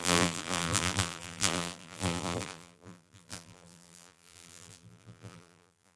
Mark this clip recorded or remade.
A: remade